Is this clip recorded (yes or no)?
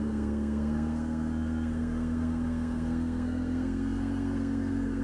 no